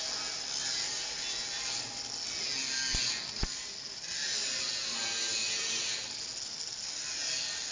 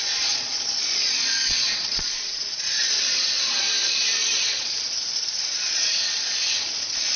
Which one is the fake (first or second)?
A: second